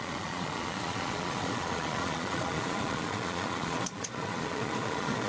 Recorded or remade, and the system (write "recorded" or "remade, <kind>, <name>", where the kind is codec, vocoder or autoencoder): remade, vocoder, Vocos